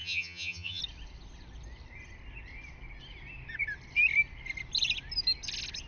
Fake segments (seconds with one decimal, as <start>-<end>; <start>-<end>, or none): 0.0-0.8

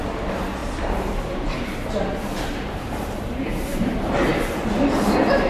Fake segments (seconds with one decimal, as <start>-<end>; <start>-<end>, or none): 0.6-3.9

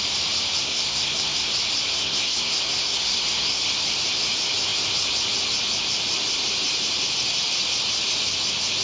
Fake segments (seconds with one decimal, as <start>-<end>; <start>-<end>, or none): 0.6-1.5; 1.9-3.6

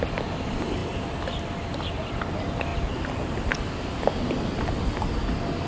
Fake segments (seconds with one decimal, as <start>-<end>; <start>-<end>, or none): none

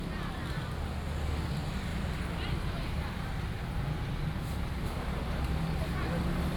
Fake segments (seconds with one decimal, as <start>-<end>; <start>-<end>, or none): 1.9-5.9

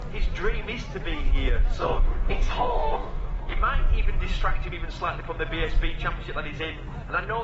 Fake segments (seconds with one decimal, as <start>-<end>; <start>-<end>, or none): 1.8-3.6

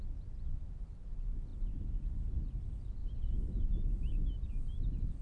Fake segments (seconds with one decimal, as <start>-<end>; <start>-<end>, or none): 3.0-4.5

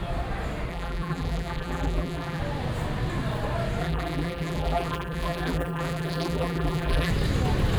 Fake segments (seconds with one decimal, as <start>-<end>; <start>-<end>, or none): 0.7-2.4; 3.8-7.1